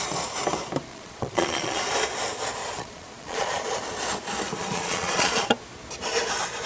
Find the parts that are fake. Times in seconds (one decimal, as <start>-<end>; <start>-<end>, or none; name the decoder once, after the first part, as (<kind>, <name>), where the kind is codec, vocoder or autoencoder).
0.9-1.8 (vocoder, Vocos); 2.6-3.8; 4.6-5.5